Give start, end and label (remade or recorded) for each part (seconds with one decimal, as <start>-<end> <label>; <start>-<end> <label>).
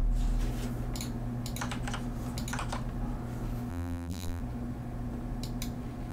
0.0-3.7 recorded; 3.7-4.4 remade; 4.4-6.1 recorded